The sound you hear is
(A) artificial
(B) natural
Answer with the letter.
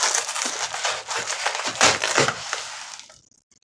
B